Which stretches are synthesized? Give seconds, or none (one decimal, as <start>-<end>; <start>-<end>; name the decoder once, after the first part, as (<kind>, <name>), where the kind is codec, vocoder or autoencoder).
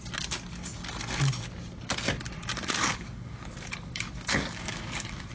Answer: 2.5-5.3 (codec, DAC)